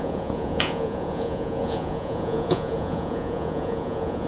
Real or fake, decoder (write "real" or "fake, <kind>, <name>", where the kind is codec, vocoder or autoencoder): fake, vocoder, Vocos